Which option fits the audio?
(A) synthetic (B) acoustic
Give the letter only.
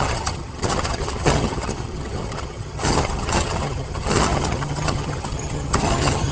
A